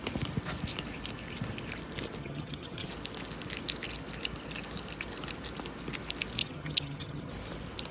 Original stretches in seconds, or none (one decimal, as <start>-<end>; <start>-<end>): 0.0-2.2; 2.9-6.4; 7.3-7.9